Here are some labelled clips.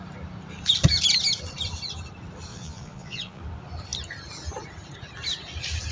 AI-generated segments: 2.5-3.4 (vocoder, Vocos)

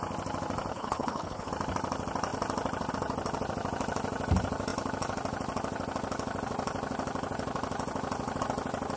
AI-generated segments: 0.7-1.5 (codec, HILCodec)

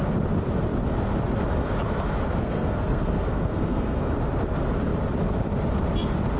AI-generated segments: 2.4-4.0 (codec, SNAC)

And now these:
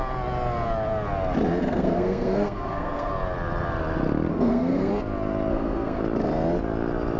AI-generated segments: 1.6-3.1 (codec, SNAC); 4.3-4.9; 5.5-6.0